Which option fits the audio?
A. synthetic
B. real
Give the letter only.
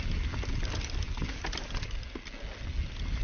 B